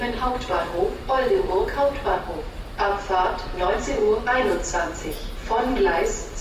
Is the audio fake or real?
fake